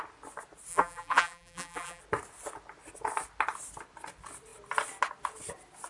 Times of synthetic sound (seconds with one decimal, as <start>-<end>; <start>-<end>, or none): 0.7-2.0